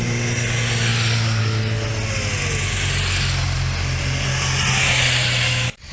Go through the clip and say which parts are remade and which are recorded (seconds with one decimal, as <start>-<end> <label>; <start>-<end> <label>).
0.0-5.9 recorded